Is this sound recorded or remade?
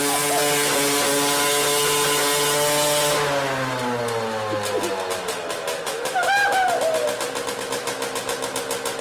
recorded